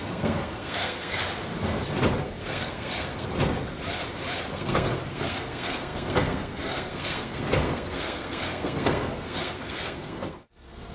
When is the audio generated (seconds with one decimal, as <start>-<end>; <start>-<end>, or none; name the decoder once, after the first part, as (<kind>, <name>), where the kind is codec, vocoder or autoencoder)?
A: 0.0-1.2 (codec, SNAC); 2.2-3.3; 4.5-10.9

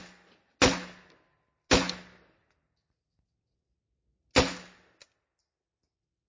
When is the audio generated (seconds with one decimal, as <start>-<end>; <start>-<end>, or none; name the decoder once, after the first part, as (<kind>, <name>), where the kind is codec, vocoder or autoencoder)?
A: none

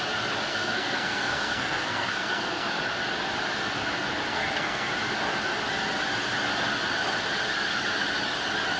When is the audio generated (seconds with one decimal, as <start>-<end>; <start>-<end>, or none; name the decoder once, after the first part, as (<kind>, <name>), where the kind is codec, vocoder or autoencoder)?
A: 0.5-2.8 (codec, SNAC); 4.3-4.9

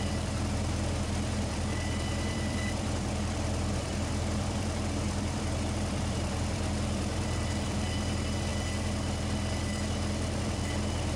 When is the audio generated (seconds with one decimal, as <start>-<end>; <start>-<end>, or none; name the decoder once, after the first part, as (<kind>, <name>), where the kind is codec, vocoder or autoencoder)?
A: 0.0-8.5 (vocoder, BigVGAN v2); 10.4-11.2

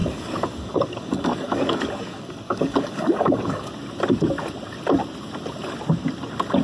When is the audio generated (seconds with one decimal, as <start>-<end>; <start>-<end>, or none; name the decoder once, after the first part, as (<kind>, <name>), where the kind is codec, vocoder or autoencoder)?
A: 0.0-3.7 (codec, DAC)

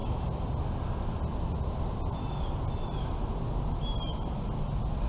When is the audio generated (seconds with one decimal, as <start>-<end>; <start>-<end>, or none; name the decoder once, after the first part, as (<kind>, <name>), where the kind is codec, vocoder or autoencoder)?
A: none